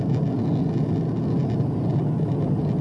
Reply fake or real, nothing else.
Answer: real